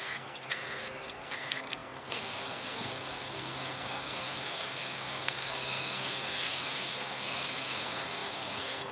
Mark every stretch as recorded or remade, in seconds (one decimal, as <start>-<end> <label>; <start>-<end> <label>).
0.0-8.9 remade